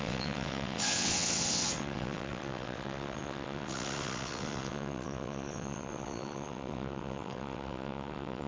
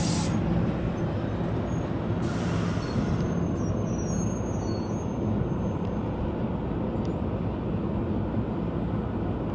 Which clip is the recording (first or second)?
second